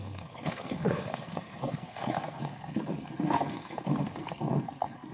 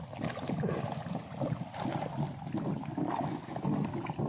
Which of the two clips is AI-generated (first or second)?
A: first